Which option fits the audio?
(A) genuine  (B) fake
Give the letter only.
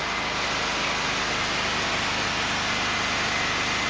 A